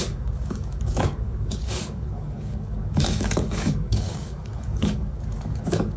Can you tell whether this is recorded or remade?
remade